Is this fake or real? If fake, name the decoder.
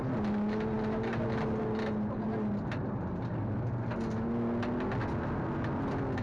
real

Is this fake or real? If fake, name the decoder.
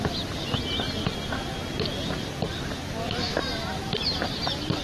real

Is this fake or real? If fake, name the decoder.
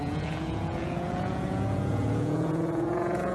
fake, vocoder, Vocos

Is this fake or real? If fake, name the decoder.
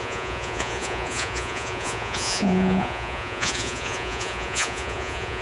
fake, vocoder, Vocos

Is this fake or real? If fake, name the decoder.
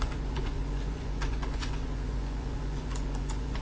fake, vocoder, Vocos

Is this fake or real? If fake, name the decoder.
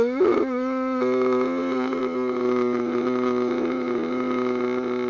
real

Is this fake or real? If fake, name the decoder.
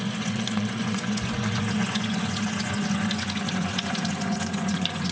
fake, vocoder, Vocos